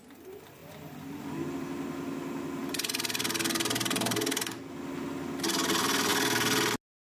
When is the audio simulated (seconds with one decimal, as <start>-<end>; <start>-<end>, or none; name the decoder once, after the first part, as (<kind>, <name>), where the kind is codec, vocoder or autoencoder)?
none